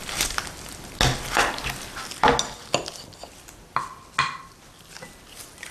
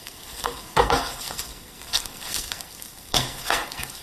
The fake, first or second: second